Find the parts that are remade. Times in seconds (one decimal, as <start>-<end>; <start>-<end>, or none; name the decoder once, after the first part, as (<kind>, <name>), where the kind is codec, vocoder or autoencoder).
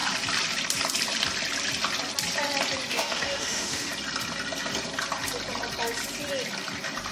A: 2.9-3.9 (autoencoder, DAC-VAE)